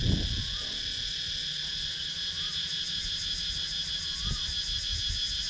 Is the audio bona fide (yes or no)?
yes